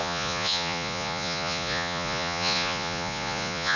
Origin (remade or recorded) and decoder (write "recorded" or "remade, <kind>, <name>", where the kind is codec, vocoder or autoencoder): remade, vocoder, Vocos